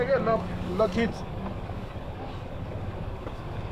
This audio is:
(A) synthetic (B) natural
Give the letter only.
A